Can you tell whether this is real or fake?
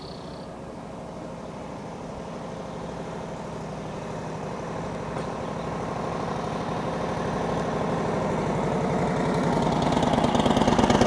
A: real